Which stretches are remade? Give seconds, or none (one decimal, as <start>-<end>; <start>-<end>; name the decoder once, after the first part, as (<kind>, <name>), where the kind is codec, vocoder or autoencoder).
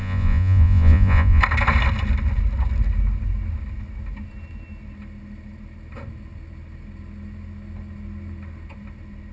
0.0-1.4 (vocoder, Vocos)